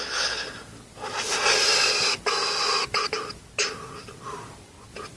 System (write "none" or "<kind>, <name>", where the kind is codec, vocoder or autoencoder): none